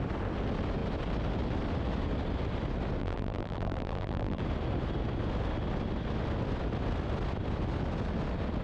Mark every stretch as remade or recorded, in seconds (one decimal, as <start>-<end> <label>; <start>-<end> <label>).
0.0-3.0 recorded; 3.0-4.4 remade; 4.4-8.6 recorded